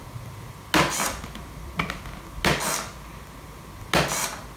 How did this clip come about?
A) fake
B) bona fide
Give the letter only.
B